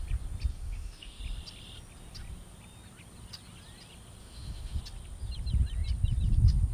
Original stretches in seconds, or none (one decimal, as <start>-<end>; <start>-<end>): 0.0-0.5; 1.2-4.2; 4.8-6.7